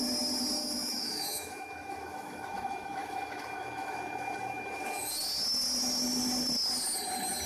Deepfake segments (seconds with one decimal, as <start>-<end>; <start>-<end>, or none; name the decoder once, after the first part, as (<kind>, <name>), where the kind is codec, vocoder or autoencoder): 0.6-5.1 (autoencoder, DAC-VAE)